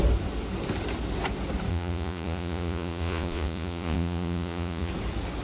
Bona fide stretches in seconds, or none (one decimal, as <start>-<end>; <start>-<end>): 0.0-1.7; 4.9-5.4